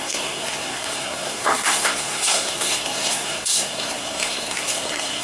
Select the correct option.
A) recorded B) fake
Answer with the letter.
B